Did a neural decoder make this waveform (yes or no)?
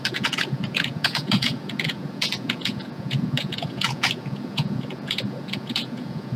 yes